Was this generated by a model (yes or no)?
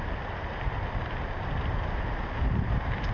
no